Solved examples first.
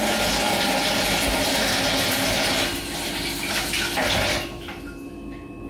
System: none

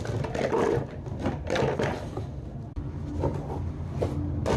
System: none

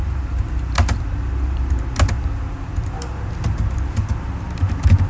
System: none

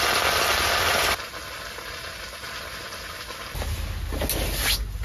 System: none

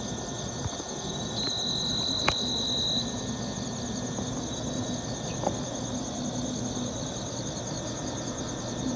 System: none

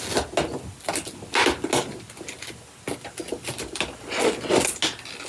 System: none